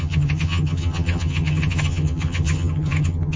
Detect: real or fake fake